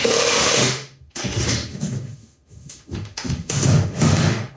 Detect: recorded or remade remade